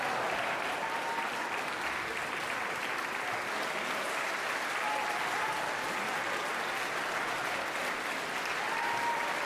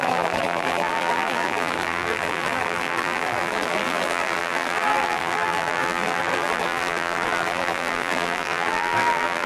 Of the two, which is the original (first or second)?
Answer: first